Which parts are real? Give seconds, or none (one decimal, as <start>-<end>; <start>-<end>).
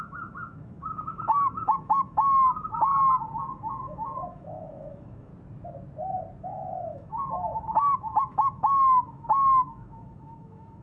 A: 2.9-3.5; 5.3-6.4